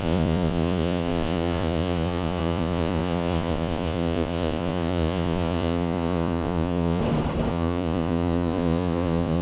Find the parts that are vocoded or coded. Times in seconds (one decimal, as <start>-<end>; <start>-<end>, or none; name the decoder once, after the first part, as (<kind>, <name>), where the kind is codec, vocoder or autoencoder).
0.0-7.0 (vocoder, Vocos); 7.5-9.4